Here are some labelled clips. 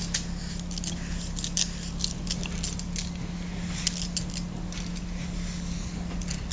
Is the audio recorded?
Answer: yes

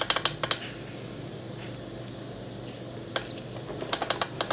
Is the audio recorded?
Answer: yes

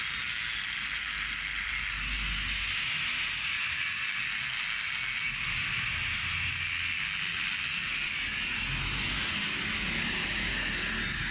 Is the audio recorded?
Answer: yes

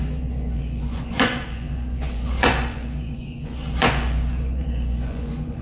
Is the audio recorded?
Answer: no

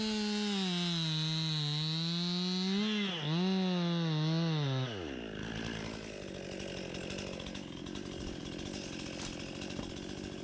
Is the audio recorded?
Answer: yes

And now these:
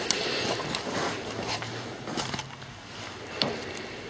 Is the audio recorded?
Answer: yes